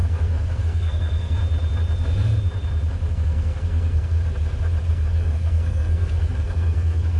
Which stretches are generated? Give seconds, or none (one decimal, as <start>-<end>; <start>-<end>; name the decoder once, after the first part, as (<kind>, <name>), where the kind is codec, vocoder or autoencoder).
0.0-1.4 (codec, SNAC); 3.1-4.2; 4.9-7.2